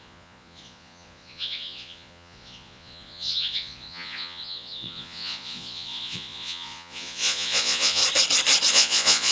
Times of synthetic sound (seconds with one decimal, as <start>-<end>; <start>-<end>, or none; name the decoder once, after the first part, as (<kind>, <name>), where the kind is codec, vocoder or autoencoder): 0.0-8.0 (vocoder, Vocos); 8.7-9.3